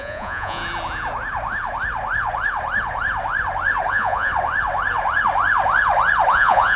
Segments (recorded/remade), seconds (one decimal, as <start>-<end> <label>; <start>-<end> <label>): 0.0-0.6 remade; 0.6-3.9 recorded; 3.9-4.3 remade; 4.3-6.3 recorded; 6.3-6.8 remade